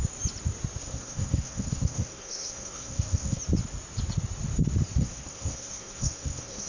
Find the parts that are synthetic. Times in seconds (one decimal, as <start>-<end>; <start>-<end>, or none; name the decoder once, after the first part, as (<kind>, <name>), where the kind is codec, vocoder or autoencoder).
0.8-3.4 (codec, SNAC); 5.0-6.7